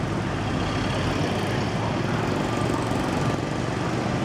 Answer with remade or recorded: recorded